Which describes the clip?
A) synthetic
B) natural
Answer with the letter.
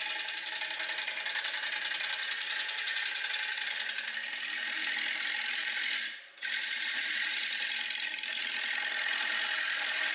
B